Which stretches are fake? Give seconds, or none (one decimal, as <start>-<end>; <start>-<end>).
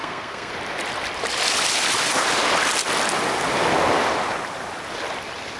0.0-0.5